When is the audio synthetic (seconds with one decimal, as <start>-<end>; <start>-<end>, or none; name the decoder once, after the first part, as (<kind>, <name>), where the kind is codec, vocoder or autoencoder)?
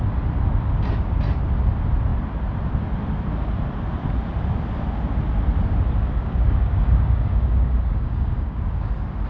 6.2-8.9 (codec, DAC)